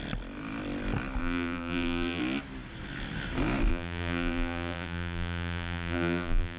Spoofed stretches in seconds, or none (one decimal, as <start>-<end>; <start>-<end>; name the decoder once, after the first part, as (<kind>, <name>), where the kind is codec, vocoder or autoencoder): 1.2-2.2 (vocoder, BigVGAN v2); 3.7-6.6